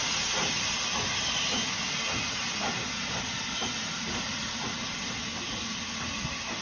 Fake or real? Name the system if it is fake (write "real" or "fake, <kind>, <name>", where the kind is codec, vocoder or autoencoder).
real